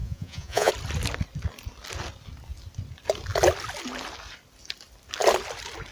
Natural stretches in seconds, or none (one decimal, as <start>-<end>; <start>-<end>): 0.7-5.9